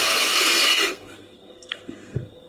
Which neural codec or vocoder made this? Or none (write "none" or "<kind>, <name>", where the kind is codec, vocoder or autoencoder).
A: codec, SNAC